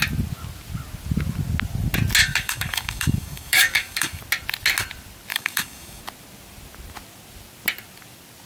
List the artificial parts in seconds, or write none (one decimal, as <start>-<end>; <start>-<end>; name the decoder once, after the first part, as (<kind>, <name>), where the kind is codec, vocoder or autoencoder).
2.2-4.2 (codec, DAC); 5.3-6.0